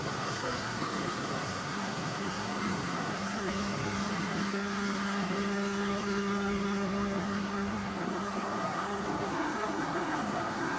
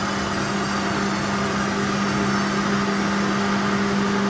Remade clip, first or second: first